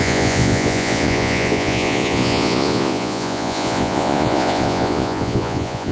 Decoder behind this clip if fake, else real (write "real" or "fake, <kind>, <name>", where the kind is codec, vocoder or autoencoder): fake, vocoder, Vocos